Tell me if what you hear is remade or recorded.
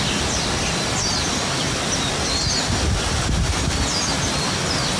recorded